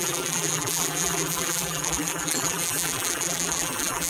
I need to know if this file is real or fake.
fake